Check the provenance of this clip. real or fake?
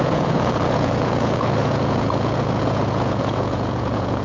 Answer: fake